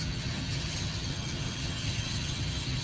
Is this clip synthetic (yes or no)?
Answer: yes